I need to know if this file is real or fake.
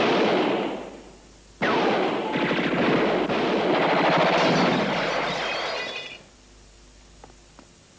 real